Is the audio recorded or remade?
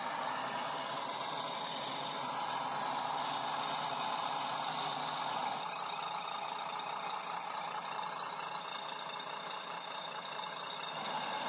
recorded